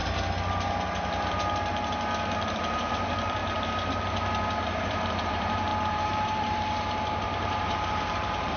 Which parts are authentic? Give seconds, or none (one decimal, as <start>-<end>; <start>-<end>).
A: 0.0-2.4; 3.4-4.8